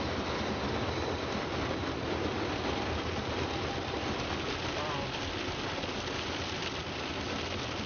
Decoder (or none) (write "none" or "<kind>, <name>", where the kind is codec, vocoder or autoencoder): none